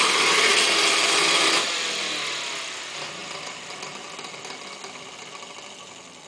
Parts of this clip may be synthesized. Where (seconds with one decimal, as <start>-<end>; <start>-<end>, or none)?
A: 3.2-3.7